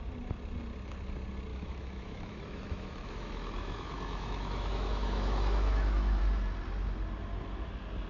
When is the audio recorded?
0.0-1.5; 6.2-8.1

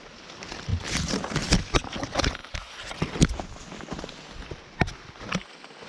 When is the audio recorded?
0.0-5.9